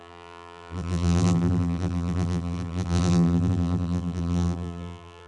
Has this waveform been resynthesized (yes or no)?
yes